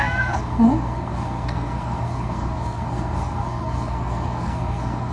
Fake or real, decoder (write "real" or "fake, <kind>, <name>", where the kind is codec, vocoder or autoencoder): fake, codec, SNAC